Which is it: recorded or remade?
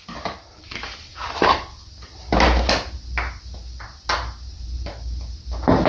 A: recorded